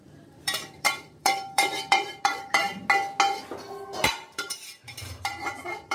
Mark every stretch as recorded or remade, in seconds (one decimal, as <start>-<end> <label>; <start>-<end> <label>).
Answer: 0.0-2.7 remade; 2.7-4.1 recorded; 4.1-5.9 remade